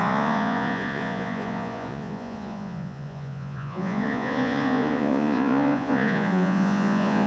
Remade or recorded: remade